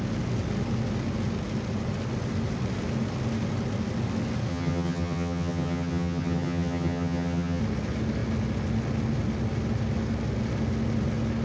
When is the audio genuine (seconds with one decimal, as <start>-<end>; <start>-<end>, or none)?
0.0-4.5; 7.6-11.4